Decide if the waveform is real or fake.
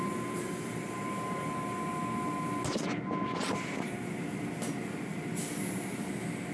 real